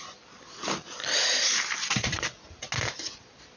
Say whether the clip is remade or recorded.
recorded